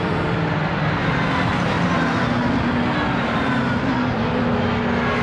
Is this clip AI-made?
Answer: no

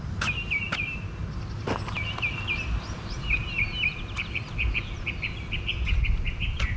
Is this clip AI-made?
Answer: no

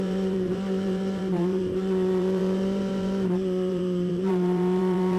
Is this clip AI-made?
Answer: yes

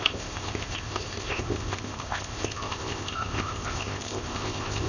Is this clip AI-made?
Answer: yes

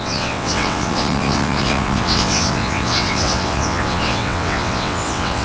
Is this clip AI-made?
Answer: yes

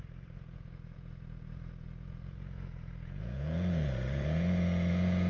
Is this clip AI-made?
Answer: yes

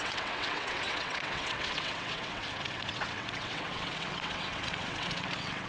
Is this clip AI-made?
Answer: yes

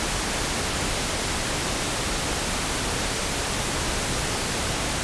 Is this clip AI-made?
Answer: no